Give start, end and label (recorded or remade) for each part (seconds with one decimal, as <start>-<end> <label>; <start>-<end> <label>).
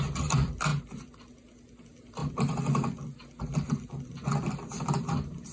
0.0-5.5 recorded